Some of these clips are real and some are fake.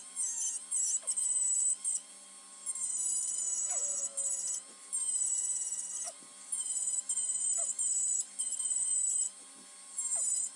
real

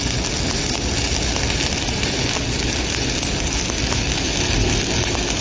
real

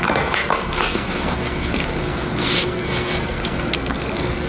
fake